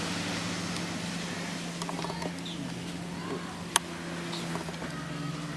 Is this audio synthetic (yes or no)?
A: no